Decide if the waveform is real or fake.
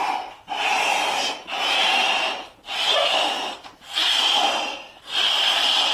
real